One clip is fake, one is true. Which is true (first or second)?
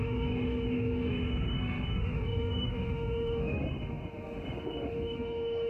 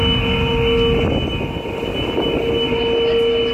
second